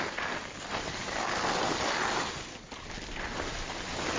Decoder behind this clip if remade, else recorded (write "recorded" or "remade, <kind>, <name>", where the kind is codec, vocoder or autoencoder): recorded